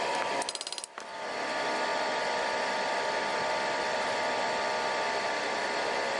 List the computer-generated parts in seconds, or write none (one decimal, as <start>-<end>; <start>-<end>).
none